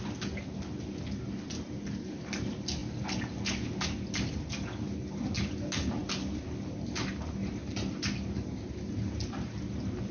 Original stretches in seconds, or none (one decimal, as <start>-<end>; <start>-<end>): 0.0-10.1

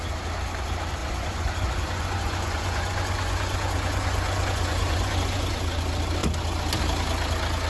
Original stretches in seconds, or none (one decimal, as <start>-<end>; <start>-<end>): 0.0-1.0; 5.6-7.7

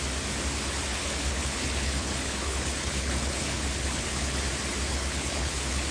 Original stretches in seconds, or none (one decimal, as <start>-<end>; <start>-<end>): 0.0-0.9; 4.4-4.9

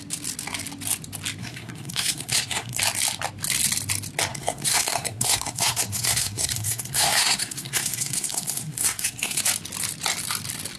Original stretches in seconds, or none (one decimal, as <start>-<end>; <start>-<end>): 0.0-1.4; 2.8-4.3; 9.4-10.8

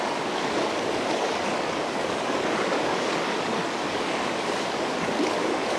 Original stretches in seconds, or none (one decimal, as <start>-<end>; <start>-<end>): none

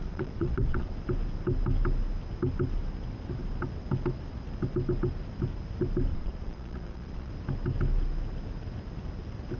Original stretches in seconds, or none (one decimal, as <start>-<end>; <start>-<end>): 0.9-6.1; 7.3-9.6

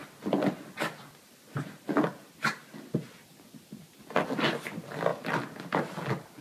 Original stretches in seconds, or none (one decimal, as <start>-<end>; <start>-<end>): 0.0-6.4